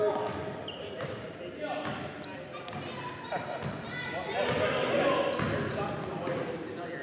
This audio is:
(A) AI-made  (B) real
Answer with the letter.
B